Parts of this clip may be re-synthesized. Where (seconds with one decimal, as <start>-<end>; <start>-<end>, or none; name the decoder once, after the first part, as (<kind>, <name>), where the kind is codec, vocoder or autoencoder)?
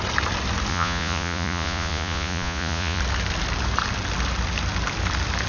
0.7-3.0 (vocoder, Vocos)